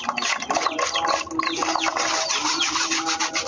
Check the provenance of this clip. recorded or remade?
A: recorded